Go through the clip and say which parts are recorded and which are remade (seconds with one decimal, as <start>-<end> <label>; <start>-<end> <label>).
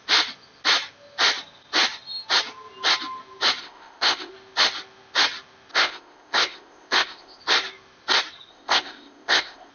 0.0-3.6 recorded; 3.6-4.3 remade; 4.3-5.7 recorded; 5.7-7.4 remade; 7.4-8.5 recorded; 8.5-9.7 remade